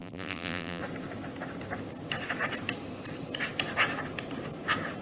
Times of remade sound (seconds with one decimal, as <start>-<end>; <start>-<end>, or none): 0.0-0.8